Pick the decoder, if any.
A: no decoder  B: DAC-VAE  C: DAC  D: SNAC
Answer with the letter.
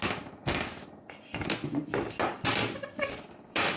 A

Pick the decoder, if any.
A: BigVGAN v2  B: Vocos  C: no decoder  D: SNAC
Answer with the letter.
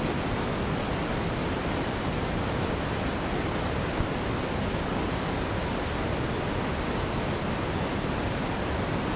C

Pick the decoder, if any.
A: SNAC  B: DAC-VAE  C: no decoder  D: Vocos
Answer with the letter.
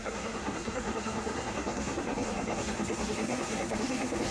A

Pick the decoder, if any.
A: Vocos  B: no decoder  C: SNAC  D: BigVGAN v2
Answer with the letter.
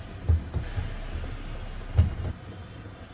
B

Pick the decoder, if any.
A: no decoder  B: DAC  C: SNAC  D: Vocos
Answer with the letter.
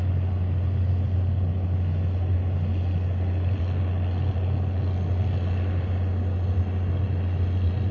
A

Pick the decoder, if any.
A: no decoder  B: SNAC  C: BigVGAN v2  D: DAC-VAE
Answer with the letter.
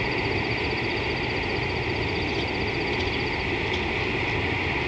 A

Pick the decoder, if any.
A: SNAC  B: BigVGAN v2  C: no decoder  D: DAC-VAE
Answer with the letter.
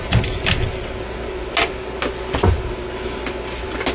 C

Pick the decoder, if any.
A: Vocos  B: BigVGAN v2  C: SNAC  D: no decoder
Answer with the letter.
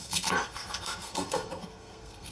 C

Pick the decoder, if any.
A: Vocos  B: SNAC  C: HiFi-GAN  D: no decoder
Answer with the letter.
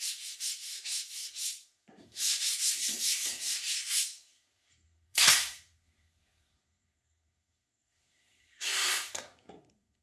B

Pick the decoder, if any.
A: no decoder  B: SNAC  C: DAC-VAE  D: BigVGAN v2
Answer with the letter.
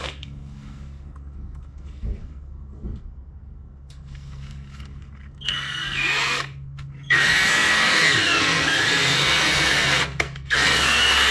B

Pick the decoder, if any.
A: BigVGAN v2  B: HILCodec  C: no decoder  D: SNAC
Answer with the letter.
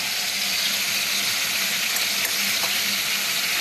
C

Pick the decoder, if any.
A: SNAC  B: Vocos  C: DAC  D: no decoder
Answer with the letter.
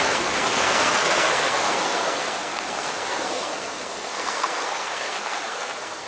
A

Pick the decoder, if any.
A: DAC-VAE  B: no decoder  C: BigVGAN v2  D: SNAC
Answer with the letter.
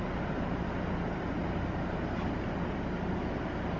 B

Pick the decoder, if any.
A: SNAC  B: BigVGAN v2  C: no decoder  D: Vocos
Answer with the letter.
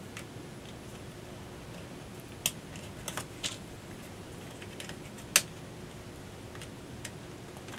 C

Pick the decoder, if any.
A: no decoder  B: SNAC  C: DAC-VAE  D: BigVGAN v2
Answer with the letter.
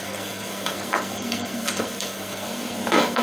B